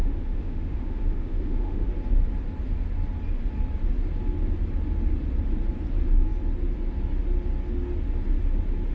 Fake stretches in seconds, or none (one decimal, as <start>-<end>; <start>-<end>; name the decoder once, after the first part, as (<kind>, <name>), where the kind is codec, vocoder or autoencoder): 0.0-1.9 (autoencoder, DAC-VAE)